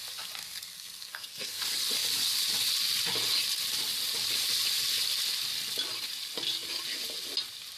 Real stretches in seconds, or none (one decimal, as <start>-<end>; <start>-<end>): 0.0-0.4; 1.6-7.8